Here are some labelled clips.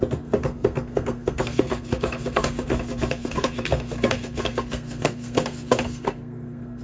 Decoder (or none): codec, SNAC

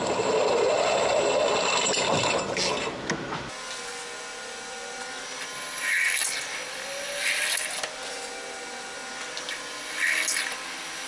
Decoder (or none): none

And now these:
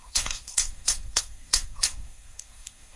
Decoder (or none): codec, SNAC